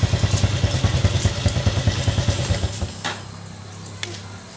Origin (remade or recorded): recorded